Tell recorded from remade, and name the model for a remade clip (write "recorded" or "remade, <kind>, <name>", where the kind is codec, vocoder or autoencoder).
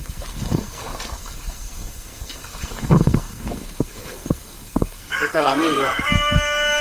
remade, codec, SNAC